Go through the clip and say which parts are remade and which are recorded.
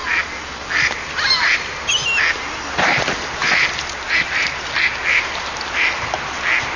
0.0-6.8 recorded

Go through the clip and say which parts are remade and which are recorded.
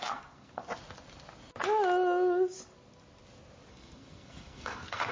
0.0-0.6 remade; 0.6-3.7 recorded; 3.7-5.1 remade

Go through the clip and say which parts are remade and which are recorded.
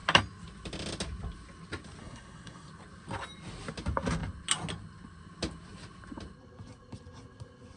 0.0-2.0 recorded; 2.0-2.7 remade; 2.7-7.8 recorded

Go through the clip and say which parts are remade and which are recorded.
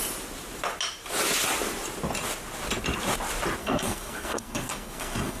0.0-3.6 recorded; 3.6-5.4 remade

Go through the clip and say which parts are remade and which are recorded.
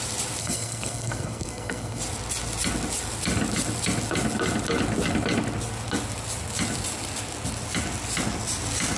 0.0-0.4 recorded; 0.4-2.0 remade; 2.0-9.0 recorded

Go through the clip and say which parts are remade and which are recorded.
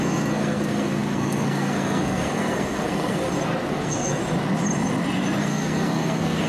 0.0-3.2 remade; 3.2-3.7 recorded; 3.7-4.2 remade; 4.2-5.4 recorded; 5.4-6.5 remade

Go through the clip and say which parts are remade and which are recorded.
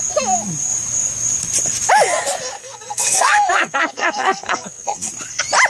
0.0-2.6 recorded; 2.6-5.1 remade; 5.1-5.7 recorded